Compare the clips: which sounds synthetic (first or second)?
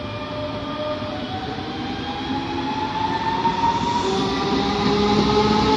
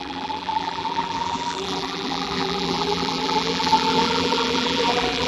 second